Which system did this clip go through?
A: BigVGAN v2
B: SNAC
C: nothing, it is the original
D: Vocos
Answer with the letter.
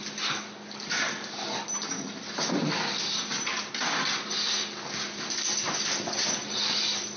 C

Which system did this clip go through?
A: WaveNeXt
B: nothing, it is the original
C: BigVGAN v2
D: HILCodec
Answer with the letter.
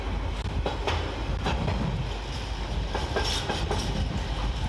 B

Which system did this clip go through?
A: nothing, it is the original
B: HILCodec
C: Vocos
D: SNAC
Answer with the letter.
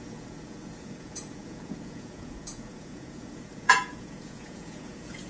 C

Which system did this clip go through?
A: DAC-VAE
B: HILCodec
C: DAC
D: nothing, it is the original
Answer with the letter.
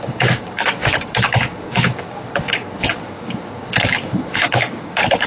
C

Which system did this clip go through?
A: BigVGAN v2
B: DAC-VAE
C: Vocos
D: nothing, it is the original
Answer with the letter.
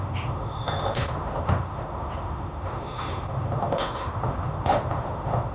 B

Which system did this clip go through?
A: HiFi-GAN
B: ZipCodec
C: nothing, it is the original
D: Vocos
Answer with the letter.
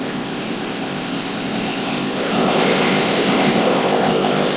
B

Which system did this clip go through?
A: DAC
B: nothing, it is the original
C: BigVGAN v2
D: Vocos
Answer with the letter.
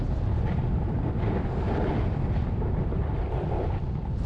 B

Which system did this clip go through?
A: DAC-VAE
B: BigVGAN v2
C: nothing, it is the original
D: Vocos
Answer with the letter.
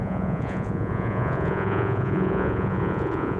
D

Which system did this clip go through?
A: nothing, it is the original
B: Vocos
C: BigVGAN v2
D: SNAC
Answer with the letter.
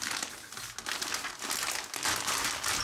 A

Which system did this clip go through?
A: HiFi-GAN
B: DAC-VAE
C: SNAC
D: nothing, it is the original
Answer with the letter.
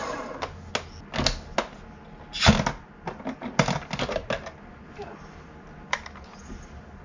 D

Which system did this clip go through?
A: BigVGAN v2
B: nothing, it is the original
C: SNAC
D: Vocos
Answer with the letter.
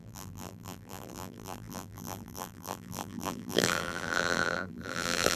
A